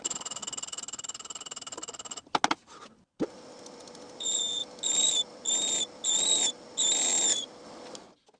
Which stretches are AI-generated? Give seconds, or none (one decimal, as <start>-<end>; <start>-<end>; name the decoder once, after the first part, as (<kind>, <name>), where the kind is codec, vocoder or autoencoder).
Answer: none